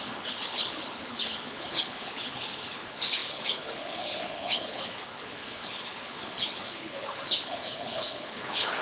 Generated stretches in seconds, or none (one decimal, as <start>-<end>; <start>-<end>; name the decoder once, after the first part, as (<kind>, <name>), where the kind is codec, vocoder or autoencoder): 0.0-8.8 (codec, HILCodec)